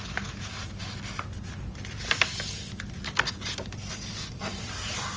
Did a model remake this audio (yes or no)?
no